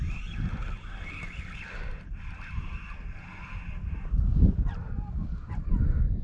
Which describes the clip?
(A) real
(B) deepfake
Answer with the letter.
A